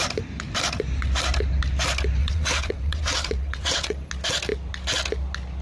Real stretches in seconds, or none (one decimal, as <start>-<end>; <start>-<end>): 0.0-2.2; 4.1-5.6